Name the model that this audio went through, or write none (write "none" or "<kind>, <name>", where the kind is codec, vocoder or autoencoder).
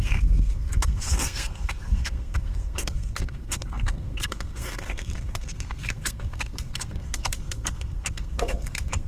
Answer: codec, SNAC